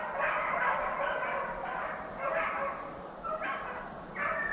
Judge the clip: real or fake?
real